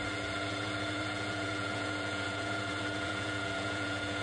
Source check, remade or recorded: remade